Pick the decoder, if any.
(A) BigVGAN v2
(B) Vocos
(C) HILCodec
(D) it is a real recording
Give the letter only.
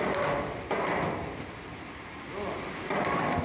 A